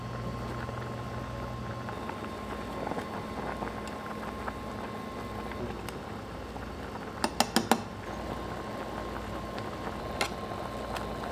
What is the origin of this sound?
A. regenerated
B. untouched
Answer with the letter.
B